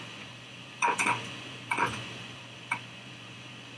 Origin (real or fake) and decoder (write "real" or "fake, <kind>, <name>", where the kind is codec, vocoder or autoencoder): fake, vocoder, Vocos